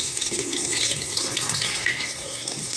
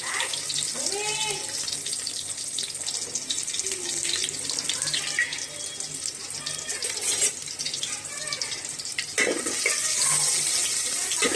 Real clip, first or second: second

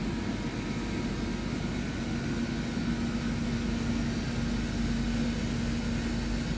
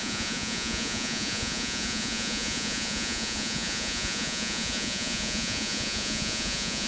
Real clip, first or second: first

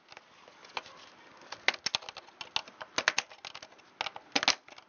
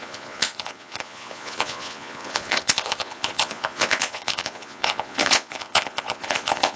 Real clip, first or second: first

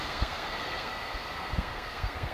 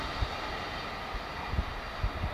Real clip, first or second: second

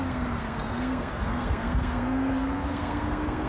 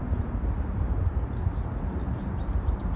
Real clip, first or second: second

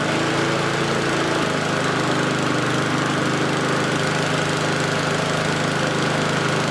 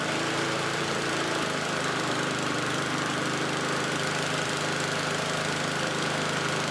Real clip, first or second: first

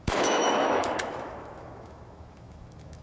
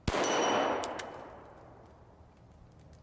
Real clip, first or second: second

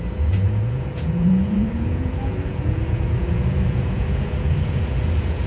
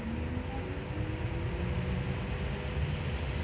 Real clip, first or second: second